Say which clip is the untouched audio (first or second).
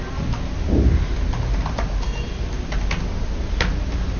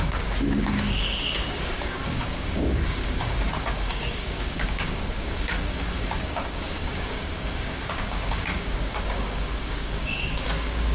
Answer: first